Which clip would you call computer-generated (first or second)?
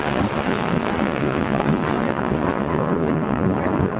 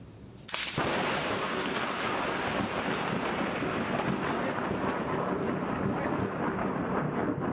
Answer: first